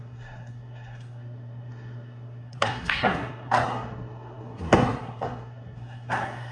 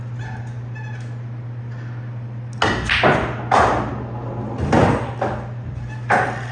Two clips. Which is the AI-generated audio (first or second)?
first